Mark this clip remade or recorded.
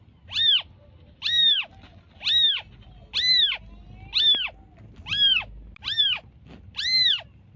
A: recorded